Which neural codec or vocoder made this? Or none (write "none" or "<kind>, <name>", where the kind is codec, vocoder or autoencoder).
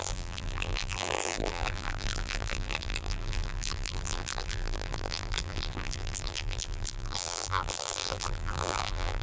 vocoder, BigVGAN v2